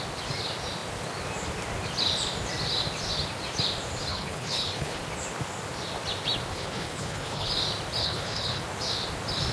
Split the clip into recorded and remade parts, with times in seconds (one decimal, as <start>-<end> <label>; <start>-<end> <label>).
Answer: 0.0-4.1 recorded; 4.1-5.0 remade; 5.0-6.5 recorded; 6.5-7.5 remade; 7.5-8.0 recorded; 8.0-8.6 remade; 8.6-9.5 recorded